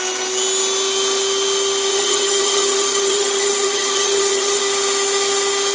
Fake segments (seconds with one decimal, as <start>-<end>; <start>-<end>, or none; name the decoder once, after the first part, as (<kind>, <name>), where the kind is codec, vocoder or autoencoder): 1.9-4.6 (vocoder, HiFi-GAN)